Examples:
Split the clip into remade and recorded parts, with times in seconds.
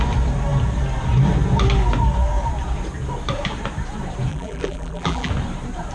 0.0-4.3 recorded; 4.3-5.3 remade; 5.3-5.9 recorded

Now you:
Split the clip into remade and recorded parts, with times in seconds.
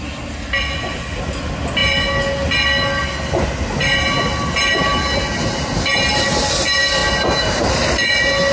0.0-8.5 recorded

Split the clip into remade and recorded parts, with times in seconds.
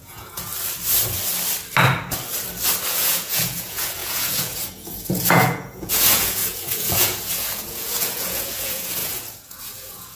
0.0-0.5 remade; 0.5-2.9 recorded; 2.9-10.2 remade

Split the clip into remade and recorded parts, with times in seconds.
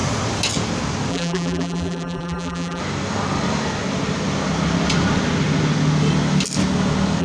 0.0-1.1 recorded; 1.1-2.8 remade; 2.8-7.2 recorded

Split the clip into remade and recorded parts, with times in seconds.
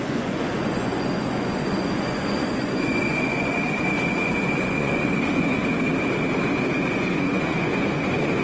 0.0-5.6 remade; 5.6-6.4 recorded; 6.4-8.4 remade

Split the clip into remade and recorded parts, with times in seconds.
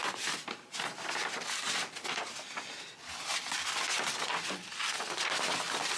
0.0-6.0 recorded